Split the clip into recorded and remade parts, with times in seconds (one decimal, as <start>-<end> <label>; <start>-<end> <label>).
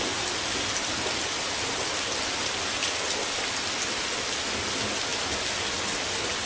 0.0-6.5 recorded